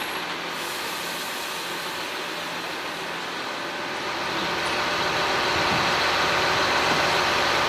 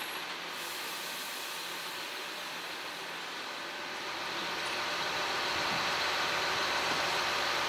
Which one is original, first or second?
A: first